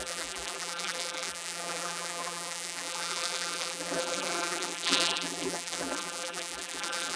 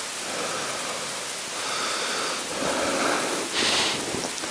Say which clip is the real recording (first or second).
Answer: second